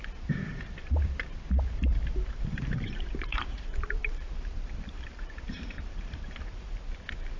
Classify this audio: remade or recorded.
remade